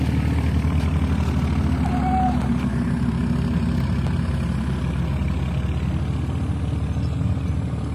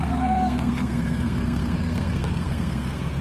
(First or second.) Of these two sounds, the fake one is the second